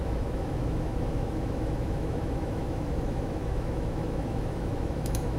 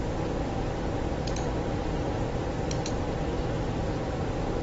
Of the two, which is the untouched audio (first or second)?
second